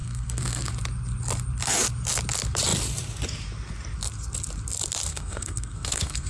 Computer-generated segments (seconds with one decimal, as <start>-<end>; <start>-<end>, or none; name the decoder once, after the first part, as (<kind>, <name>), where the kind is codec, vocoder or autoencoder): 0.0-0.7 (codec, SNAC); 5.1-6.3